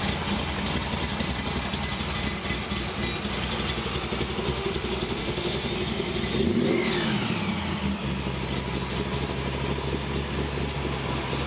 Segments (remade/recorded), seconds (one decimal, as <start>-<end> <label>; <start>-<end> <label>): 0.0-4.5 recorded; 4.5-5.7 remade; 5.7-11.5 recorded